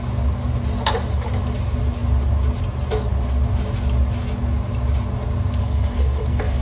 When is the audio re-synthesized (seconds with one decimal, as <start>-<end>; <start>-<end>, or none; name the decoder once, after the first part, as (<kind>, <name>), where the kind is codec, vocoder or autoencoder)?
5.6-6.6 (codec, SNAC)